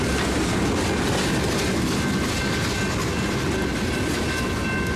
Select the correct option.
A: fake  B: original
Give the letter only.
B